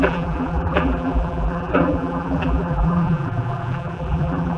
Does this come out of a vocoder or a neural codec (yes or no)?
yes